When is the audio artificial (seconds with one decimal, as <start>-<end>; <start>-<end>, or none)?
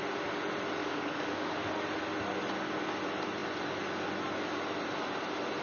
0.8-1.7